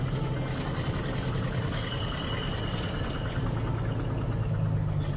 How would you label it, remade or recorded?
recorded